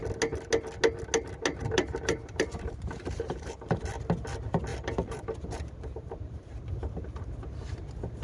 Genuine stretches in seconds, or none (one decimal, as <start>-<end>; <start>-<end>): 0.0-1.5; 3.7-4.7; 6.8-8.2